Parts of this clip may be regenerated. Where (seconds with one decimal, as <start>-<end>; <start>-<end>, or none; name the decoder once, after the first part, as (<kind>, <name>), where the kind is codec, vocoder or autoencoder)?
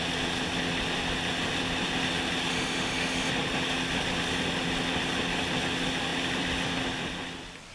2.5-3.3 (autoencoder, DAC-VAE)